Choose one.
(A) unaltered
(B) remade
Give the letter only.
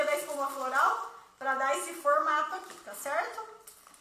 A